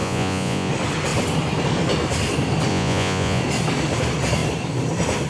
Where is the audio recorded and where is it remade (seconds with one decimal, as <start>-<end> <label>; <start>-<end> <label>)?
0.0-0.7 remade; 0.7-2.7 recorded; 2.7-3.4 remade; 3.4-5.3 recorded